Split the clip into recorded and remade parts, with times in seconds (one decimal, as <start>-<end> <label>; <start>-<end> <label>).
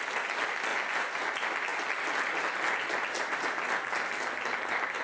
0.0-5.0 recorded